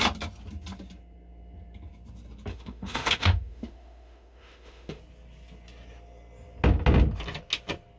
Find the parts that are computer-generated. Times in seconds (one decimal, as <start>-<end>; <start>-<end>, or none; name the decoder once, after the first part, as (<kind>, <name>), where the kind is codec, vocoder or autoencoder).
2.5-5.0 (autoencoder, DAC-VAE)